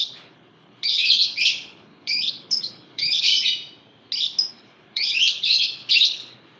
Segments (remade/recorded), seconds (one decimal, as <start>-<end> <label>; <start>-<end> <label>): 0.0-3.3 remade; 3.3-4.5 recorded; 4.5-6.6 remade